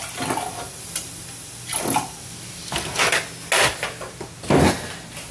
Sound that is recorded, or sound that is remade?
recorded